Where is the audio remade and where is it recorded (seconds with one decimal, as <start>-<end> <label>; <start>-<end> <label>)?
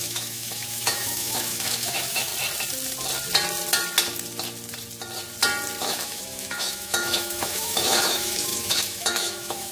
0.0-2.3 remade; 2.3-5.8 recorded; 5.8-9.7 remade